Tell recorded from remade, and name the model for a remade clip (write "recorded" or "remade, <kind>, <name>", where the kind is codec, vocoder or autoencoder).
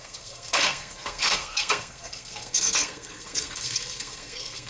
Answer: remade, codec, SNAC